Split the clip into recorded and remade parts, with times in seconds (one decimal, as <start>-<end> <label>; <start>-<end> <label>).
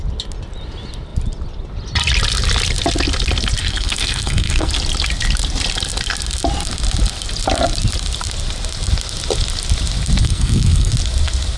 0.0-3.6 recorded; 3.6-4.7 remade; 4.7-10.2 recorded; 10.2-10.9 remade; 10.9-11.6 recorded